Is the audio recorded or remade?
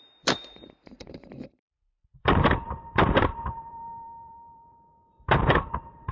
remade